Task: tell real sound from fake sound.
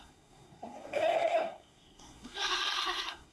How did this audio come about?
fake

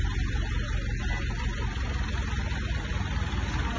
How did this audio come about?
real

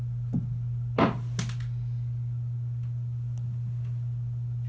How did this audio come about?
real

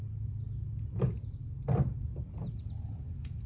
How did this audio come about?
real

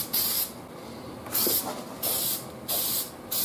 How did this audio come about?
real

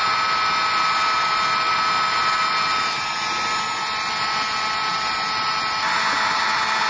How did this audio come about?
real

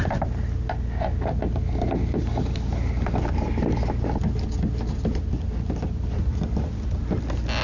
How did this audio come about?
real